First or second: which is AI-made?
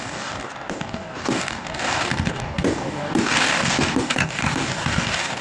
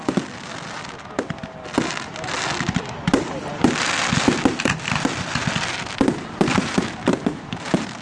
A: first